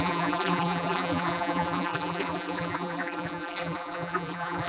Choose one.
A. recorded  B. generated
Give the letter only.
B